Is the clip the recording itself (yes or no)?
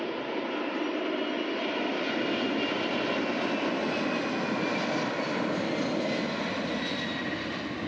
yes